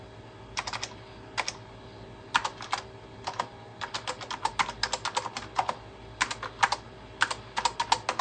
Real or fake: real